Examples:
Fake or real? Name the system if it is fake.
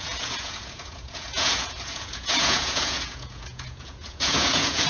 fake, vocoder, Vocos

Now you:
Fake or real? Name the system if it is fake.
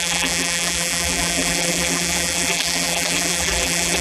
fake, vocoder, BigVGAN v2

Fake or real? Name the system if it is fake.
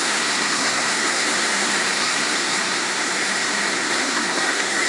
fake, codec, SNAC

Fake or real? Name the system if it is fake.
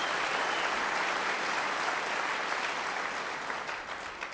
real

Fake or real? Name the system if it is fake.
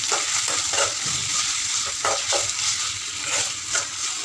real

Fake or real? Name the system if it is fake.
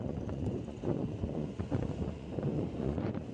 fake, vocoder, Vocos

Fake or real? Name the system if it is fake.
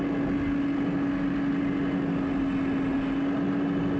real